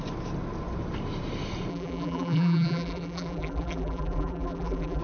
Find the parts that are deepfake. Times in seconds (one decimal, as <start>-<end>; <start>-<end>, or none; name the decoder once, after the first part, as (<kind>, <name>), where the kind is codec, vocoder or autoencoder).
1.7-5.0 (vocoder, BigVGAN v2)